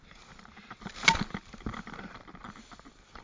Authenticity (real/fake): real